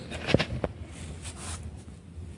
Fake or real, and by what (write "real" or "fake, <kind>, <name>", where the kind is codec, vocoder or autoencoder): real